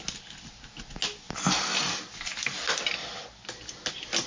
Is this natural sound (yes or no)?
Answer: yes